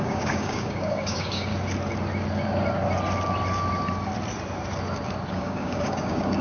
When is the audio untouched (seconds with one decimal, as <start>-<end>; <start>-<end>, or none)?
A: 1.5-5.3